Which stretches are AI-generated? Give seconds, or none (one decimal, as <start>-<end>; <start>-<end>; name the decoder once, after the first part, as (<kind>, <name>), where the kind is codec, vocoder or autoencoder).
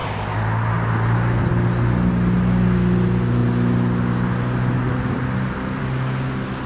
none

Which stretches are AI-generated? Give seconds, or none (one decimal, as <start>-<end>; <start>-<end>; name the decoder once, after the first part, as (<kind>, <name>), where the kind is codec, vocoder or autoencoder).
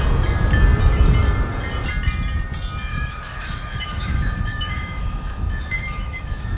2.9-6.6 (autoencoder, DAC-VAE)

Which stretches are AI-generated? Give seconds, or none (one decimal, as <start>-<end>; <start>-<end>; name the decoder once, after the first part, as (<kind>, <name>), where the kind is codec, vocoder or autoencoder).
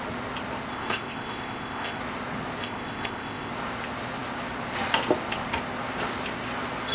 0.7-2.0 (codec, ZipCodec); 2.6-3.5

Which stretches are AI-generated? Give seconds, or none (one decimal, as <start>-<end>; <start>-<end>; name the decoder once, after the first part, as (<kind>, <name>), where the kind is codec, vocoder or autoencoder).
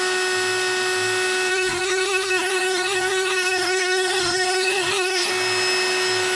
1.5-5.3 (codec, SNAC)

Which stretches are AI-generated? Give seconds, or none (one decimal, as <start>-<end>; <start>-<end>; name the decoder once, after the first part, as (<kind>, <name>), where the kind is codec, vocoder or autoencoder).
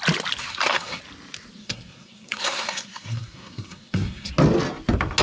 0.4-1.0 (codec, SNAC); 1.6-4.3